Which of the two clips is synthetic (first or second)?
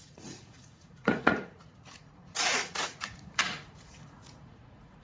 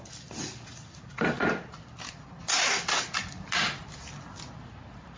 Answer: first